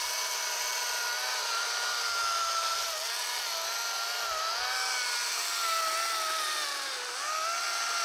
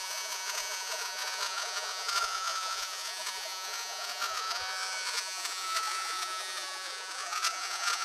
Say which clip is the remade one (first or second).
second